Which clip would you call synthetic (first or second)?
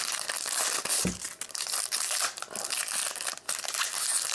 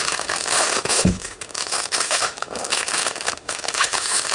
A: second